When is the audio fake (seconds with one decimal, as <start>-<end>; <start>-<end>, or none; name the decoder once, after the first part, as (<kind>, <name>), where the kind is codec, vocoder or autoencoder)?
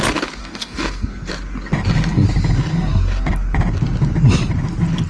0.4-1.3 (codec, SNAC)